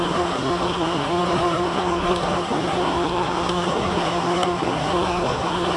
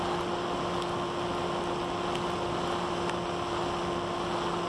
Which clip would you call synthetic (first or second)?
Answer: first